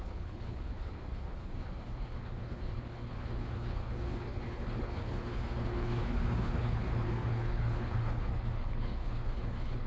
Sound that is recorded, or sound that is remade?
remade